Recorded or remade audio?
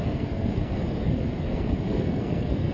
remade